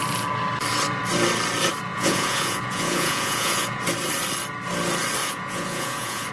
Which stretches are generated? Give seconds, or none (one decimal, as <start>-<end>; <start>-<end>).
1.9-3.8; 5.2-6.3